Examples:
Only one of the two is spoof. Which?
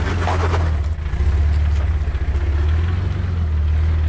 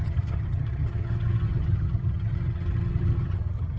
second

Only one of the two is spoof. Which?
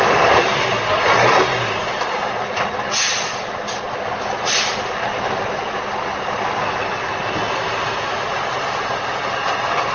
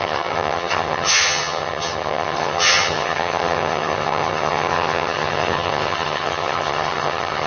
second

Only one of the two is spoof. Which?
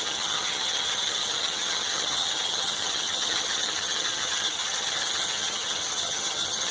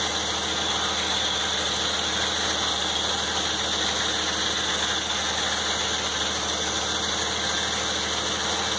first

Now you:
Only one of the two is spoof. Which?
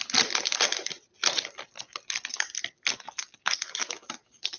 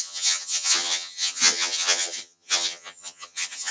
second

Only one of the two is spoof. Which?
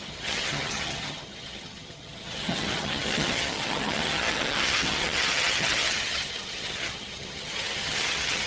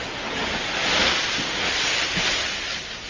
first